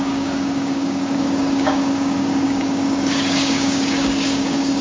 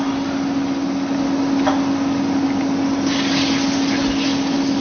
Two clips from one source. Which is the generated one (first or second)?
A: first